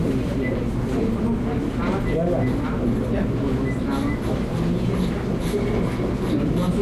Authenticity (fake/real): real